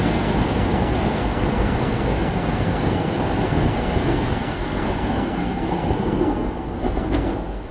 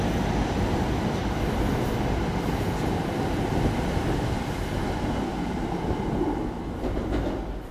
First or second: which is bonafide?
second